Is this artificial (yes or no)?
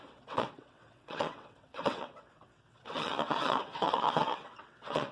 yes